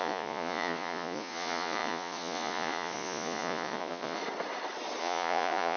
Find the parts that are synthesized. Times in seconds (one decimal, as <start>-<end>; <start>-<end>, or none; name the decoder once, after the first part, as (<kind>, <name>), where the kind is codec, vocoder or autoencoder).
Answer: 0.0-4.2 (vocoder, Vocos); 5.0-5.8